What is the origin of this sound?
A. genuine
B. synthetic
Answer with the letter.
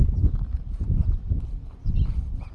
A